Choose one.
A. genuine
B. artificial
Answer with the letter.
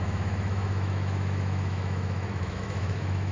B